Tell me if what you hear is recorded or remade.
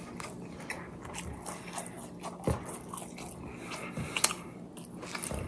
recorded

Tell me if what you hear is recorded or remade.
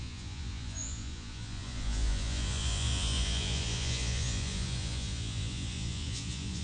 remade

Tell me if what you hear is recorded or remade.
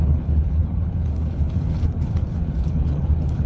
remade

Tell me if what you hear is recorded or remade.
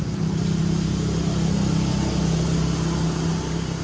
recorded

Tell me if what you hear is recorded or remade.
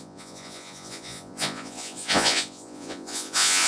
remade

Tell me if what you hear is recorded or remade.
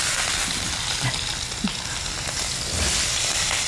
recorded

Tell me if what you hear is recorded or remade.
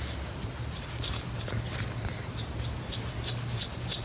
recorded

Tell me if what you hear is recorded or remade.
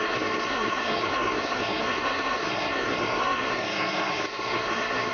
remade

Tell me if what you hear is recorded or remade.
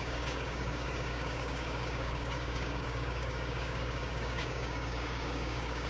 remade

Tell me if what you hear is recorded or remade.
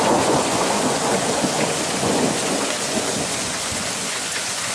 remade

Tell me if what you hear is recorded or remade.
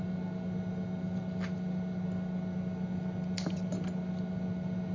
recorded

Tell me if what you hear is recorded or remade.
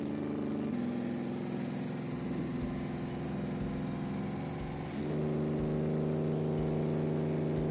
recorded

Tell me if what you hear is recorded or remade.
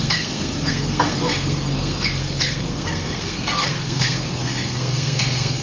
remade